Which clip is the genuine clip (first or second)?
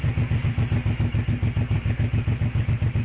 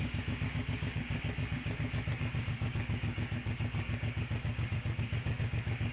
first